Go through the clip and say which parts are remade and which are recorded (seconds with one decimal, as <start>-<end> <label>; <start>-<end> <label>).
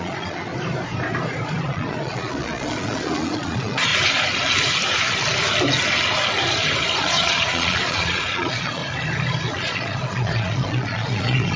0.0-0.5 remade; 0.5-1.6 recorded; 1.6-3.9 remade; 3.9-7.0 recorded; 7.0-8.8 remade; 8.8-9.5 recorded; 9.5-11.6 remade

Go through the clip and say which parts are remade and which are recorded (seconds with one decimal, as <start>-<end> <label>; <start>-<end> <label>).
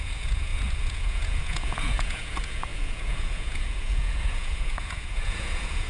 0.0-5.9 remade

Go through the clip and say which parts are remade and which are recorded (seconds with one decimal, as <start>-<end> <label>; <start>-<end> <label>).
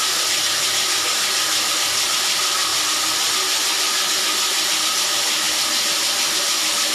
0.0-6.9 recorded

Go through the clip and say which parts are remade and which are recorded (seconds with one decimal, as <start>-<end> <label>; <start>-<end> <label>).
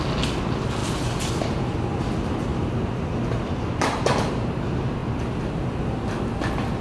0.0-6.8 recorded